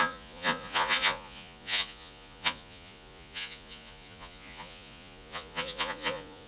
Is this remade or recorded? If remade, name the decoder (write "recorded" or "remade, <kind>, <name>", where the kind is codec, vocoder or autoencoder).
remade, vocoder, Vocos